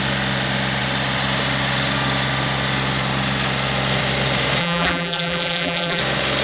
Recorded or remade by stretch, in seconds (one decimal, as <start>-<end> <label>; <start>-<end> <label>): 0.0-4.6 recorded; 4.6-6.0 remade; 6.0-6.4 recorded